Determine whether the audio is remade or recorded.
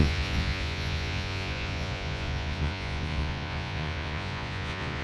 remade